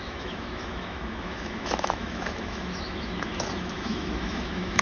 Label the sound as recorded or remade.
remade